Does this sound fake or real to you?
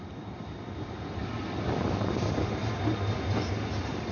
real